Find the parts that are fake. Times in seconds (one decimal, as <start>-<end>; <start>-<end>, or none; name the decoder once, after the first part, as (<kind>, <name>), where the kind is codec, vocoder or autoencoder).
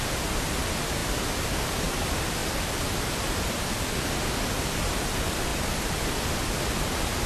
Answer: none